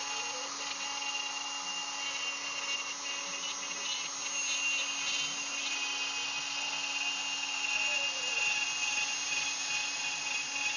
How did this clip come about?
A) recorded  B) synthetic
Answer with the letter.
A